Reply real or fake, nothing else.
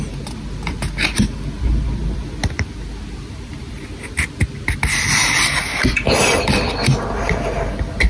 real